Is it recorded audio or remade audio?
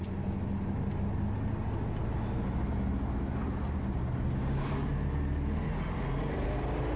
recorded